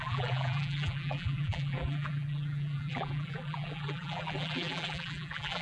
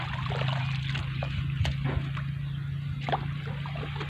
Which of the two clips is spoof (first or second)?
first